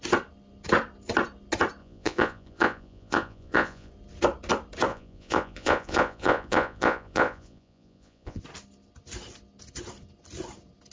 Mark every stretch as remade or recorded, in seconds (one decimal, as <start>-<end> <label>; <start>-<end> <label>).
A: 0.0-1.8 recorded; 1.8-3.9 remade; 3.9-4.9 recorded; 4.9-8.4 remade; 8.4-10.9 recorded